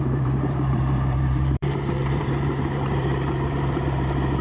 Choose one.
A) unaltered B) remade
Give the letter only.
B